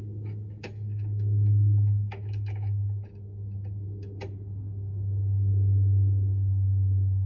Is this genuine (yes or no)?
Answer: no